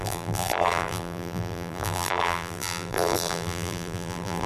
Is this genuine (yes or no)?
no